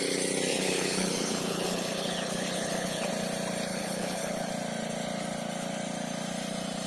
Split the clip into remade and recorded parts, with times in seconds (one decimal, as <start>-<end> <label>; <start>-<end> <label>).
0.0-0.5 recorded; 0.5-3.1 remade; 3.1-3.7 recorded; 3.7-4.5 remade; 4.5-6.9 recorded

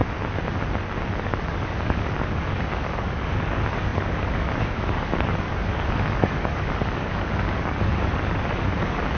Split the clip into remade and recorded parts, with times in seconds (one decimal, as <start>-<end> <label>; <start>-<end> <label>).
0.0-1.2 recorded; 1.2-9.2 remade

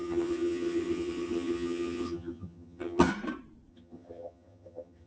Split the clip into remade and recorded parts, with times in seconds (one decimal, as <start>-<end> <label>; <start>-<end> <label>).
0.0-3.1 remade; 3.1-3.7 recorded; 3.7-5.1 remade